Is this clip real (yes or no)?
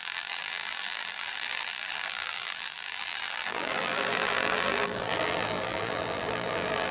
no